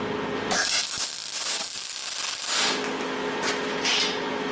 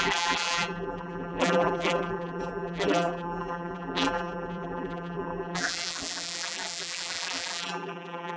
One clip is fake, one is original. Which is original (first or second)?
first